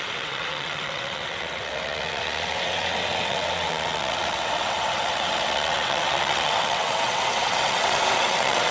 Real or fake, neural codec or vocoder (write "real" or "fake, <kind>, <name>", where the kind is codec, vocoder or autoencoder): fake, vocoder, WaveNeXt